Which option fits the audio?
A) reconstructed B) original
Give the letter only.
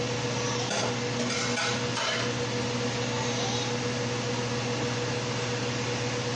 B